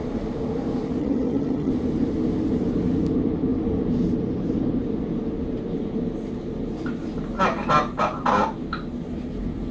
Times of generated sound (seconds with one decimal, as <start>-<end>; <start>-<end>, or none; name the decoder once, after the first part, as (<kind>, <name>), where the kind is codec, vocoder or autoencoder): 1.0-1.7 (vocoder, HiFi-GAN)